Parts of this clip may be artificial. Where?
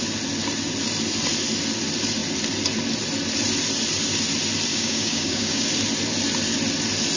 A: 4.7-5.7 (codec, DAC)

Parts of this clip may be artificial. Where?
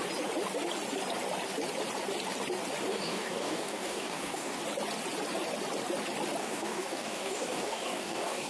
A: 2.9-4.6 (codec, DAC); 6.4-8.5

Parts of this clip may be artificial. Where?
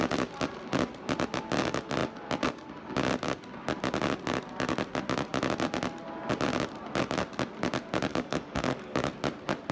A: 8.1-9.1 (codec, DAC)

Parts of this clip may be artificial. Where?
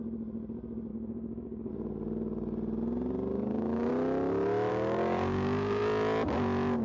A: 0.9-1.7 (codec, DAC); 3.3-3.9; 4.7-5.8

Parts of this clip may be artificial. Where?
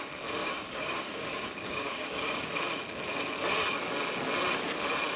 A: 0.4-2.5 (codec, DAC)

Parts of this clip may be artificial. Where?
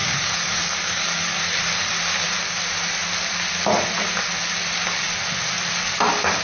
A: 0.0-1.4 (codec, DAC)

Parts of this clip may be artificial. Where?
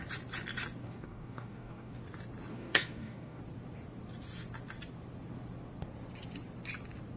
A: 0.8-2.0 (codec, DAC); 2.5-3.4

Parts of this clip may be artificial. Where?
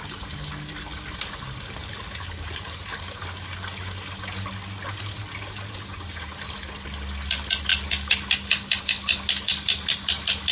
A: none